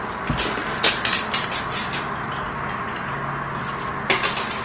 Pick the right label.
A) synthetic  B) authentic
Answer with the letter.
B